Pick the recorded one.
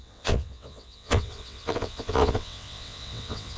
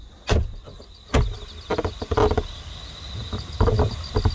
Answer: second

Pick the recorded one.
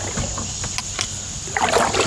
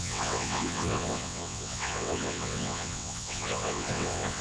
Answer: first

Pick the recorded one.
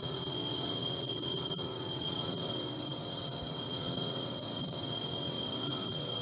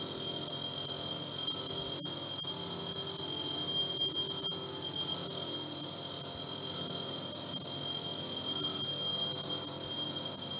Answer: second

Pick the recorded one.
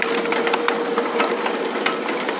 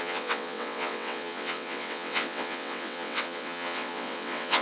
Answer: first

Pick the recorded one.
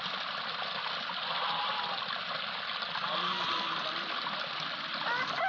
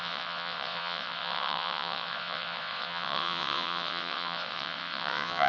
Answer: first